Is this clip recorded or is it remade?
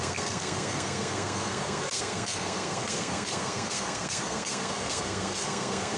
remade